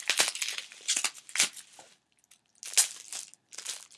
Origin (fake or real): real